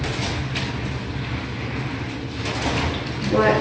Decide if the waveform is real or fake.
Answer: real